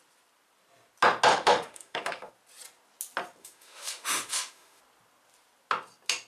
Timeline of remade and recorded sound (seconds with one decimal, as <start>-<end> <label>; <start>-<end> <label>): 0.0-1.3 recorded; 1.3-2.3 remade; 2.3-3.4 recorded; 3.4-4.8 remade; 4.8-6.3 recorded